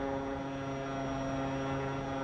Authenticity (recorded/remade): recorded